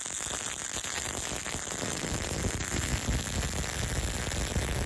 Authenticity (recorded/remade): recorded